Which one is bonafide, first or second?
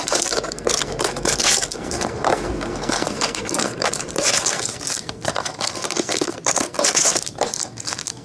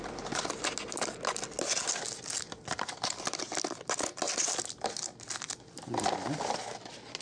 second